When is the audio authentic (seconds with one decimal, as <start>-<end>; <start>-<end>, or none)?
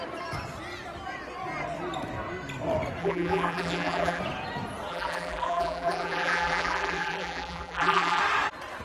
0.0-3.0; 4.2-4.9; 8.2-8.8